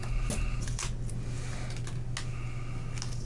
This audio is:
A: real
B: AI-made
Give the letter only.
A